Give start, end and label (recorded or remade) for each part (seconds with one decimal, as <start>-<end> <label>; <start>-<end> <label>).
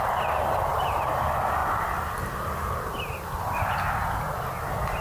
0.0-0.7 recorded; 0.7-1.2 remade; 1.2-5.0 recorded